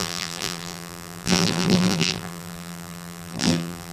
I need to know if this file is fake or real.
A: fake